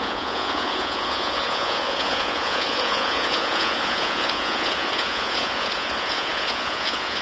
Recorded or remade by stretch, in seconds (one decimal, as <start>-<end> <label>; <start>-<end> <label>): 0.0-7.2 remade